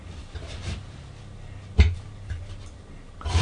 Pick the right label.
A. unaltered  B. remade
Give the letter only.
A